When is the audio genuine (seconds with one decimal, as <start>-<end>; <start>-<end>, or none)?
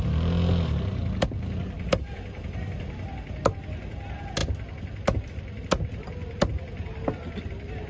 0.0-7.9